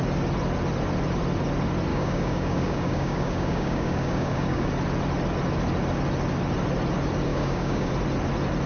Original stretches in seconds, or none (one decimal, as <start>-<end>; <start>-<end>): 0.0-1.9; 4.7-7.3; 7.9-8.7

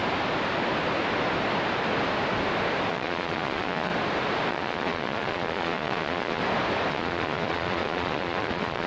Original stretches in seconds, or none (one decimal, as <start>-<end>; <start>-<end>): 0.0-2.9; 3.9-4.5; 6.4-6.9

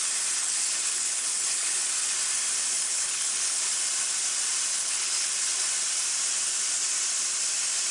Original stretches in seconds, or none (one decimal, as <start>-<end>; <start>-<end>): 0.0-0.4; 1.8-2.8; 3.7-4.7; 5.3-7.9

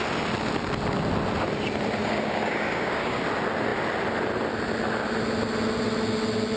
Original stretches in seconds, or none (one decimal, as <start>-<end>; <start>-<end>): 0.0-2.0; 3.2-6.6

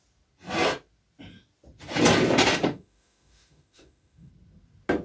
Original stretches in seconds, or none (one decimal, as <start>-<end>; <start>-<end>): 0.0-2.5; 4.3-5.0